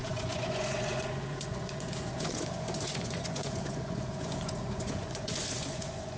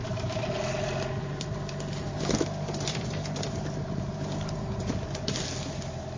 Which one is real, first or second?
second